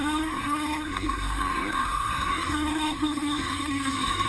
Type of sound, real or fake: fake